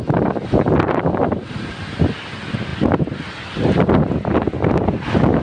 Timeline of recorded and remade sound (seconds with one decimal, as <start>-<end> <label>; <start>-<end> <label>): 0.0-5.4 recorded